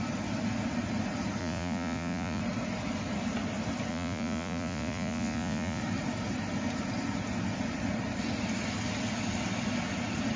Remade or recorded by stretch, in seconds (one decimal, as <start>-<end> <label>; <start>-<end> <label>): 0.0-1.4 recorded; 1.4-2.4 remade; 2.4-3.9 recorded; 3.9-5.8 remade; 5.8-10.4 recorded